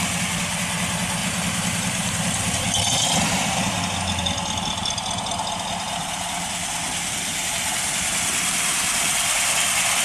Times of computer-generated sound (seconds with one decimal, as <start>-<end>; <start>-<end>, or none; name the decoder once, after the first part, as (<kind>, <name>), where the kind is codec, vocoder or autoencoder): 1.2-3.7 (vocoder, BigVGAN v2)